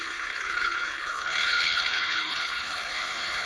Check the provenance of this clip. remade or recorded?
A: remade